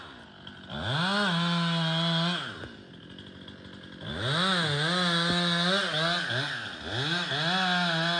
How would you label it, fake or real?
real